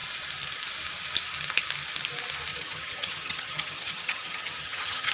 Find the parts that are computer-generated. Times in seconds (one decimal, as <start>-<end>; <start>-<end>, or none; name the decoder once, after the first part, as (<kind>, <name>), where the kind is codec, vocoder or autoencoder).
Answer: 2.5-5.1 (vocoder, HiFi-GAN)